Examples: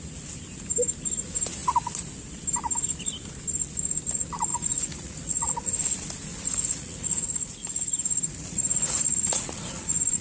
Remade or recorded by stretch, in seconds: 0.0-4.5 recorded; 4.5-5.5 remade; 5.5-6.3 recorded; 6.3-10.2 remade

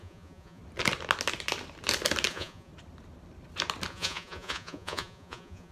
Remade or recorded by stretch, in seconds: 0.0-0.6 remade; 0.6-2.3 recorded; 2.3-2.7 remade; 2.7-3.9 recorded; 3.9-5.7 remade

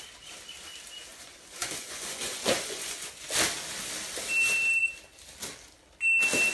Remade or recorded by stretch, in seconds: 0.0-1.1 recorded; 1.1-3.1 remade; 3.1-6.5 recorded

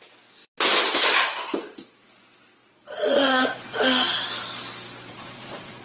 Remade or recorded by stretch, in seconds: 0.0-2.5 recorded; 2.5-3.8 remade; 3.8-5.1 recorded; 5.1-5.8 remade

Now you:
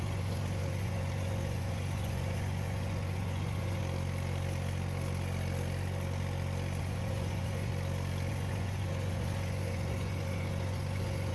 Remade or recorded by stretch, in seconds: 0.0-3.8 remade; 3.8-6.8 recorded; 6.8-7.7 remade; 7.7-8.3 recorded; 8.3-11.3 remade

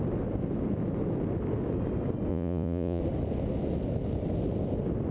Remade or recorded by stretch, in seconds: 0.0-2.3 recorded; 2.3-3.0 remade; 3.0-5.1 recorded

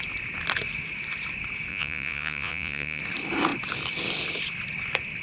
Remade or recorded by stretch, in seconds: 0.0-1.7 recorded; 1.7-3.0 remade; 3.0-5.2 recorded

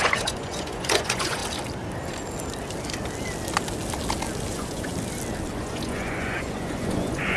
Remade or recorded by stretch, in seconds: 0.0-1.4 remade; 1.4-4.5 recorded; 4.5-4.9 remade; 4.9-5.5 recorded; 5.5-7.4 remade